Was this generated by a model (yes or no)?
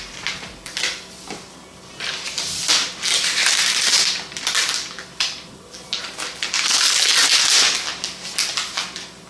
no